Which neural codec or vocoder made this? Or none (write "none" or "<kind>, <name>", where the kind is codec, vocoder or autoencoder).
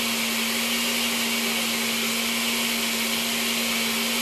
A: none